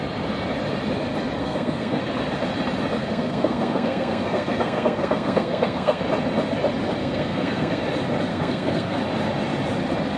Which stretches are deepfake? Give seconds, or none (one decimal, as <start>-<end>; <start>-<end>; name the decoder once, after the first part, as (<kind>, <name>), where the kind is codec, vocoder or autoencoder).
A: 1.4-2.0 (codec, SNAC); 3.0-6.0; 7.0-7.8; 8.3-9.0